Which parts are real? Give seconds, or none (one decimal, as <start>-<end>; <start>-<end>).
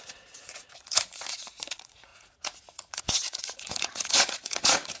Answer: 1.1-1.7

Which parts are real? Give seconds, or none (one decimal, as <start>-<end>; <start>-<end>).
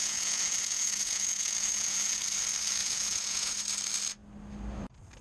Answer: 2.2-2.8; 3.6-5.2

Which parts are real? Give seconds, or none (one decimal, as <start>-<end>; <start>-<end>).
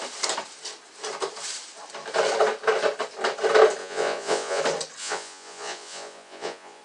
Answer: 0.0-3.8; 4.6-5.0